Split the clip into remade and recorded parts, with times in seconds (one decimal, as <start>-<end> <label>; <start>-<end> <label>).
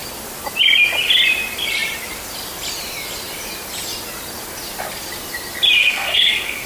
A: 0.0-5.8 recorded; 5.8-6.7 remade